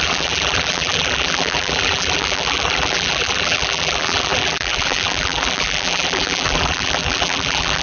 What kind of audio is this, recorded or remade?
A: remade